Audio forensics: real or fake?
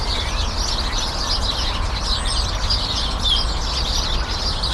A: real